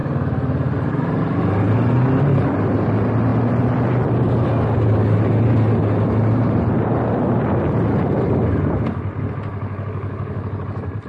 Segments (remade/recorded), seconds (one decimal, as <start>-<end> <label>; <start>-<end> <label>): 0.0-9.5 recorded; 9.5-10.6 remade; 10.6-11.1 recorded